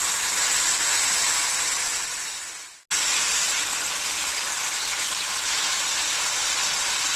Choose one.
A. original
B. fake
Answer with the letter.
A